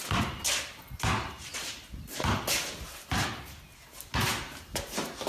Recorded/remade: recorded